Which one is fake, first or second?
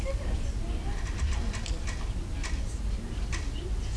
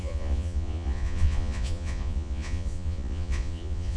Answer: second